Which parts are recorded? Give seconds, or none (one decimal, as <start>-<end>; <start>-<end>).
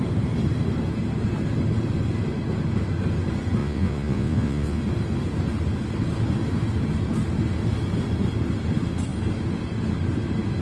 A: 0.0-3.6; 4.8-10.6